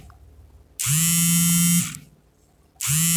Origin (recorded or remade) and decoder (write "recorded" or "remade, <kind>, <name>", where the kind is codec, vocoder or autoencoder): recorded